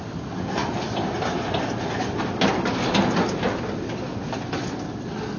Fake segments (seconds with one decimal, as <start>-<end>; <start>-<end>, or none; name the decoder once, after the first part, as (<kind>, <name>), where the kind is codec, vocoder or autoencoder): none